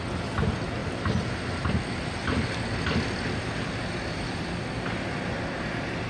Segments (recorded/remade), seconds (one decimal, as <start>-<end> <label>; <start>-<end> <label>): 0.0-6.1 recorded